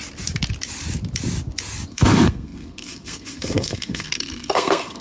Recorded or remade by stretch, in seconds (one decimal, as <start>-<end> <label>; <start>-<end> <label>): 0.0-1.9 recorded; 1.9-5.0 remade